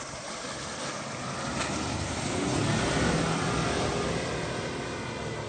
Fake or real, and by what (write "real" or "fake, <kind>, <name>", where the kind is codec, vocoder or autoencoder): real